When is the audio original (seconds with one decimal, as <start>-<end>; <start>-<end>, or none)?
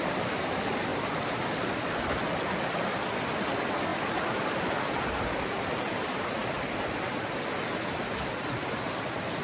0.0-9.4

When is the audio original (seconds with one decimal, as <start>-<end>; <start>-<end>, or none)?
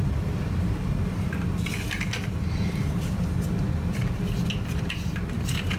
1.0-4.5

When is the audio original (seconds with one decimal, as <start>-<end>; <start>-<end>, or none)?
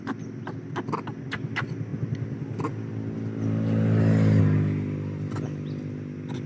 0.0-6.5